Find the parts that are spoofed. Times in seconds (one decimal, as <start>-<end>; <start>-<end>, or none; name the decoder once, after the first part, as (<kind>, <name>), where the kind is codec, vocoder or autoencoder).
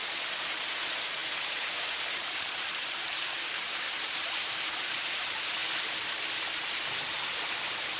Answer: 0.7-5.6 (vocoder, BigVGAN v2); 6.9-8.0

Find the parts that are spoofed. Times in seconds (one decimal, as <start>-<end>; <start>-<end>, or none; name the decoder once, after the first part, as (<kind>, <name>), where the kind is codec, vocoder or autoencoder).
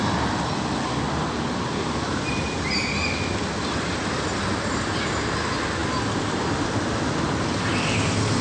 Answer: none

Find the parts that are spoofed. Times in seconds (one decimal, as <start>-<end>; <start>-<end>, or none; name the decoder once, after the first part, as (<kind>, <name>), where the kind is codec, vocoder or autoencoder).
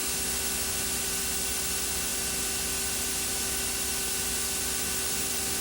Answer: 0.0-1.2 (vocoder, BigVGAN v2); 2.1-5.6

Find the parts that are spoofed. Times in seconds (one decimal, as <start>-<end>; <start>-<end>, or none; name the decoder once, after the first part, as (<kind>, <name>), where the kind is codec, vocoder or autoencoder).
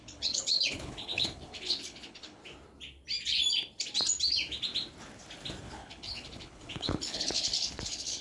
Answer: 0.0-2.4 (codec, HILCodec); 5.6-8.2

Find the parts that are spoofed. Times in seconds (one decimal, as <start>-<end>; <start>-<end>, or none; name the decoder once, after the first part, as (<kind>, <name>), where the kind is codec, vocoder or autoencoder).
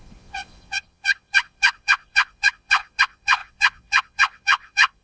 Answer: 0.0-5.0 (vocoder, Vocos)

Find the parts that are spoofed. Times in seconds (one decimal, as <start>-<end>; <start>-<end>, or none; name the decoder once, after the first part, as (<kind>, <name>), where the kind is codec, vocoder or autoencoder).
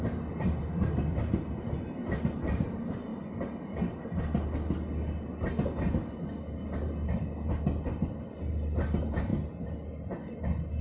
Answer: none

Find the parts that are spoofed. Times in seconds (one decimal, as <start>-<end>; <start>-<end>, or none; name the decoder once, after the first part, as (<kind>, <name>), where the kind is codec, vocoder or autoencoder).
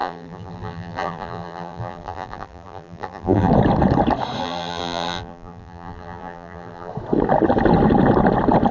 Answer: 0.0-3.5 (vocoder, BigVGAN v2); 4.4-6.9